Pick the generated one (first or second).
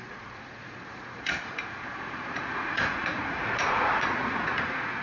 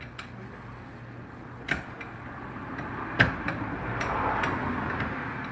first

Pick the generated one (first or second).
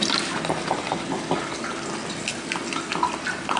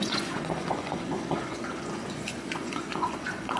second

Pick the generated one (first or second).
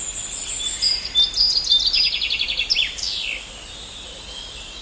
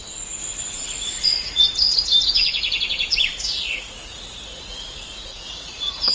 second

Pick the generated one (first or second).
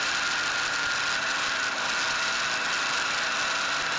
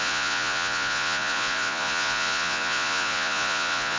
second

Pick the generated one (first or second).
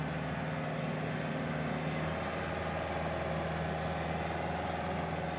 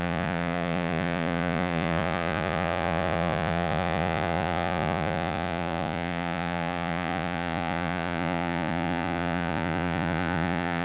second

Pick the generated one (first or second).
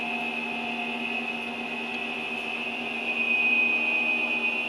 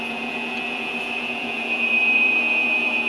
second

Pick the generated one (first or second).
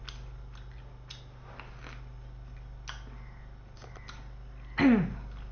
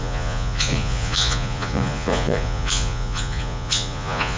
second